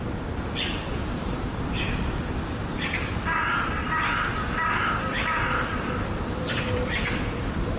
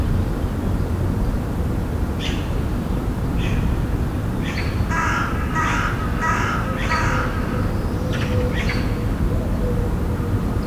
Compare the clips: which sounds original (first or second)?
second